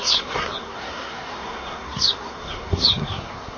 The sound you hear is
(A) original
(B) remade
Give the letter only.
B